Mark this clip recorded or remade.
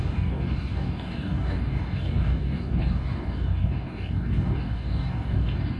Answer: remade